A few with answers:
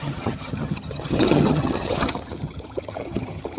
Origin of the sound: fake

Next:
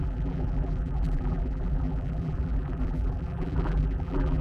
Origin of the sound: fake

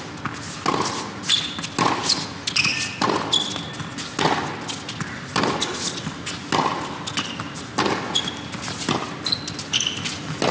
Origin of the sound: real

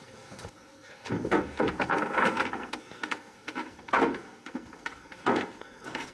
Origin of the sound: fake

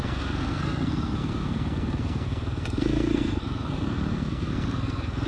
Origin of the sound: fake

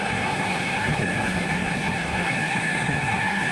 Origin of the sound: fake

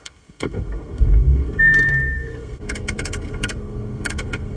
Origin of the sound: fake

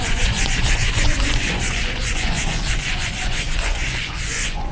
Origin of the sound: fake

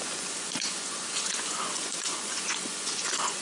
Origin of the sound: fake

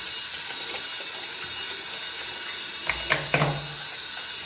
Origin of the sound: real